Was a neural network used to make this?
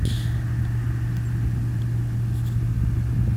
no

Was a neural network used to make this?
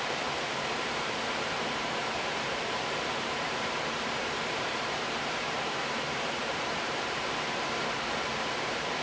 yes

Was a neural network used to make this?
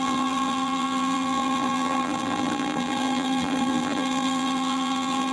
yes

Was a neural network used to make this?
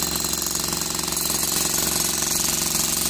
no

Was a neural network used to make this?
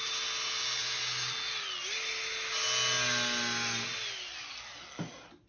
no